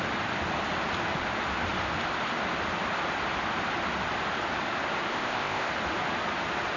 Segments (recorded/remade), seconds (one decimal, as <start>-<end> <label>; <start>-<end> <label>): 0.0-5.1 recorded; 5.1-5.7 remade; 5.7-6.8 recorded